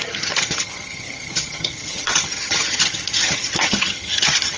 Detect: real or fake fake